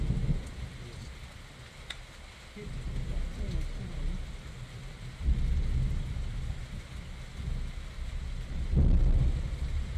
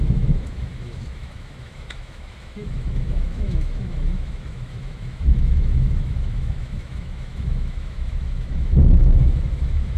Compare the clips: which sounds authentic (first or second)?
first